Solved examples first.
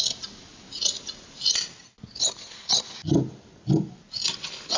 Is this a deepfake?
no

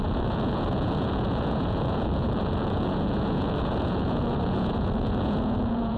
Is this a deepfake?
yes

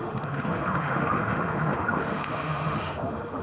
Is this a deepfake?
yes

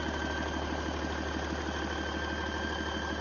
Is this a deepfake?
no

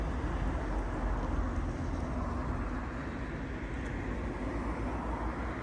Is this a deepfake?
no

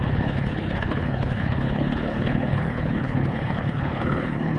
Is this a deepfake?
yes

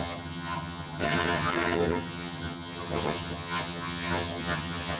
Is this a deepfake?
yes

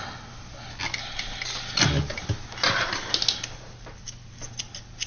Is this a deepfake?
no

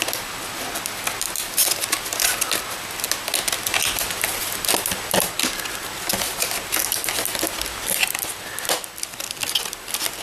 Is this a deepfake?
no